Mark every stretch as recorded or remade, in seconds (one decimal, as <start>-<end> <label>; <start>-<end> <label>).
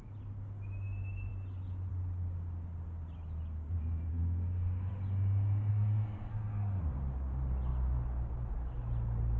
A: 0.0-4.1 recorded; 4.1-4.9 remade; 4.9-5.7 recorded; 5.7-6.8 remade; 6.8-9.4 recorded